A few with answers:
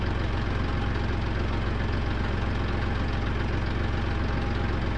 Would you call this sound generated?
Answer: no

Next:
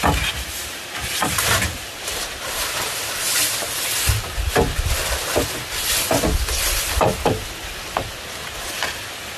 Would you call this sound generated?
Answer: no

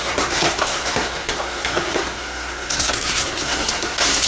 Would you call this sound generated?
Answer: yes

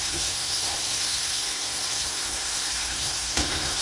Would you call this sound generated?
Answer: yes